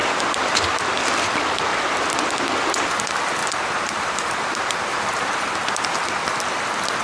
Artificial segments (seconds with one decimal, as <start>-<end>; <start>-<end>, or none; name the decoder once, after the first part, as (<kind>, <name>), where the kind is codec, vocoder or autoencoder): 0.0-0.8 (vocoder, BigVGAN v2); 3.4-5.4